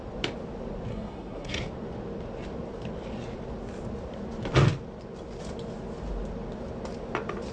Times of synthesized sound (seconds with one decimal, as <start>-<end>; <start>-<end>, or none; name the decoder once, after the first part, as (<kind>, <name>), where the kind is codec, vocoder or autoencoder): 0.9-1.6 (codec, SNAC)